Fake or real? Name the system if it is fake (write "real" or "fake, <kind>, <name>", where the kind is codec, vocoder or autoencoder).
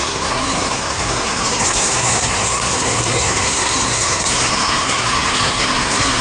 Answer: fake, codec, SNAC